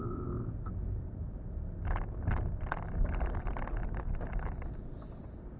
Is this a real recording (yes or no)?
yes